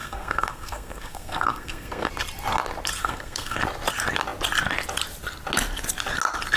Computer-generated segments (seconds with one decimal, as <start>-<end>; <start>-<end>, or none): 0.0-2.1; 3.0-3.6